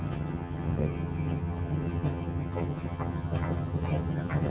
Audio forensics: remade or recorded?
remade